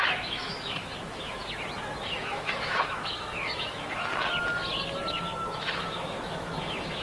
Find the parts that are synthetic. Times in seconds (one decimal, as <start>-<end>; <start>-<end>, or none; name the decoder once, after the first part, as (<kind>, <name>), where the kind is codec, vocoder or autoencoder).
0.0-1.4 (autoencoder, DAC-VAE); 2.0-4.1; 5.5-7.0